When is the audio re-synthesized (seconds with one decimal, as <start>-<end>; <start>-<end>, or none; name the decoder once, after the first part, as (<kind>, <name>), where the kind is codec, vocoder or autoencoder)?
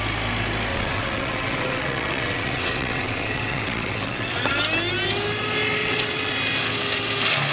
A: 0.7-4.5 (vocoder, WaveNeXt); 5.8-6.3